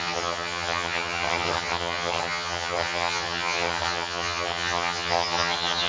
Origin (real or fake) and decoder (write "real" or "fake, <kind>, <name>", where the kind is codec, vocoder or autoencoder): fake, vocoder, HiFi-GAN